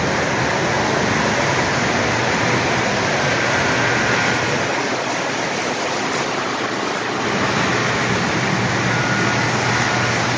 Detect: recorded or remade recorded